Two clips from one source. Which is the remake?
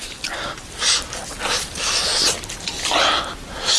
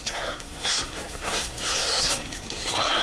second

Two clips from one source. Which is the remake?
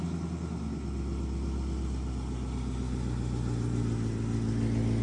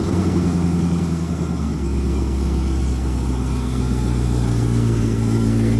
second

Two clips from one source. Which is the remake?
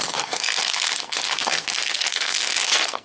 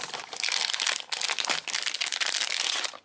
first